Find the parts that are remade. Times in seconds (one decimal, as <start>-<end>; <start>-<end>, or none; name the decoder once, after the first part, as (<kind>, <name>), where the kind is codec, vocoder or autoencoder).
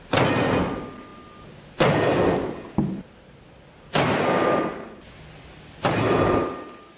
none